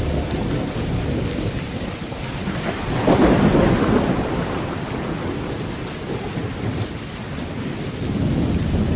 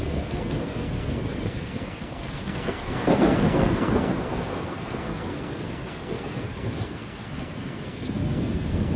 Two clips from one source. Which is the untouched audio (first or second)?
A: first